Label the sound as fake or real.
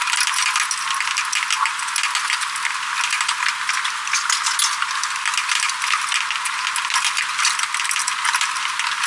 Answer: real